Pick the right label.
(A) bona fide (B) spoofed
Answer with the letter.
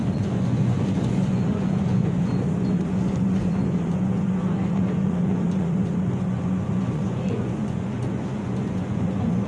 B